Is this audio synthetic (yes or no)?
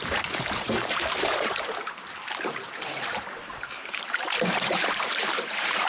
yes